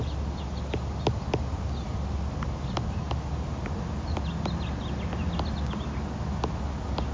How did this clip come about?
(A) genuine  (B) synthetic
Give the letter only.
A